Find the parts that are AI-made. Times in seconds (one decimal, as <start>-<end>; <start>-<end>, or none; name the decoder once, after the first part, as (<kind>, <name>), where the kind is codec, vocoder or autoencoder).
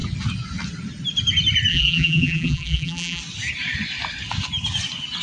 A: 1.7-3.2 (vocoder, BigVGAN v2)